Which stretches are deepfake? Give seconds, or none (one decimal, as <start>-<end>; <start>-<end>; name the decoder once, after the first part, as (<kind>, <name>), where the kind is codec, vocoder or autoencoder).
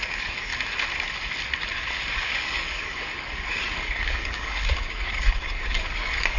0.0-0.5 (codec, DAC); 2.1-6.4